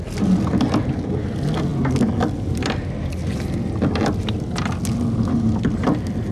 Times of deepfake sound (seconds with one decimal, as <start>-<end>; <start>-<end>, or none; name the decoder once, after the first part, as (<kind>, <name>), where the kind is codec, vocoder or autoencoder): none